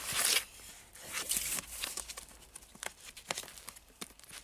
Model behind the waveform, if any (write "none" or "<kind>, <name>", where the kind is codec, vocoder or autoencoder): none